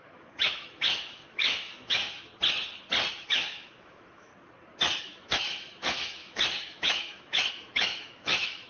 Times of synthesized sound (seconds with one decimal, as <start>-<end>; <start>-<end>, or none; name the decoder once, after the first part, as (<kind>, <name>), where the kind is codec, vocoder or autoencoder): 0.0-2.3 (autoencoder, DAC-VAE); 3.1-4.3; 5.0-8.7

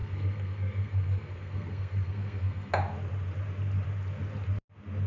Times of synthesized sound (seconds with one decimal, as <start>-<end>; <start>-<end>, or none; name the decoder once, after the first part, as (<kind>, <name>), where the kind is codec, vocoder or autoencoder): 0.0-2.7 (codec, SNAC)

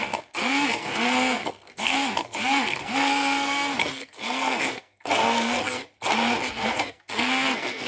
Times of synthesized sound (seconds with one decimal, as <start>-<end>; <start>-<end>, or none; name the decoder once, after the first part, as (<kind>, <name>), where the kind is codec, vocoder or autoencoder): 0.0-5.8 (codec, SNAC); 6.5-7.9

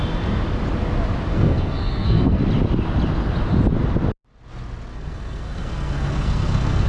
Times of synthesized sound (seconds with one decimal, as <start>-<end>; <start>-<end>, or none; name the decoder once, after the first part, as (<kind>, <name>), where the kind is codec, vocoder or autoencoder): 1.3-2.4 (codec, SNAC); 4.9-6.9

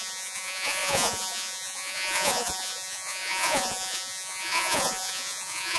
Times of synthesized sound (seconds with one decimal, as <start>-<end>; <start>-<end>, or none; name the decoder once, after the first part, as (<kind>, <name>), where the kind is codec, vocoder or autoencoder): 0.0-5.8 (vocoder, Vocos)

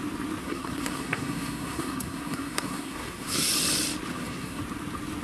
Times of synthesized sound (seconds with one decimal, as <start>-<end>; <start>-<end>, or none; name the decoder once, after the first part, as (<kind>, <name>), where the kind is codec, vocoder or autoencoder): 0.4-3.5 (codec, SNAC); 4.1-4.6

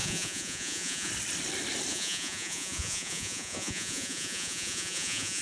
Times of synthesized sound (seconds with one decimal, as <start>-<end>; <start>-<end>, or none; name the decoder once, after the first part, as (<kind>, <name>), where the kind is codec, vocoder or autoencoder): 0.0-1.1 (vocoder, Vocos); 1.9-5.4